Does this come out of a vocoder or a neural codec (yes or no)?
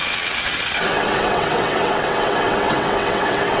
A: yes